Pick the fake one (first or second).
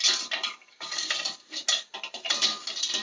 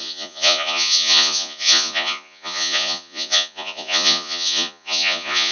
second